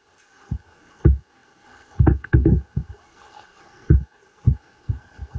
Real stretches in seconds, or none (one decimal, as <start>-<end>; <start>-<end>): none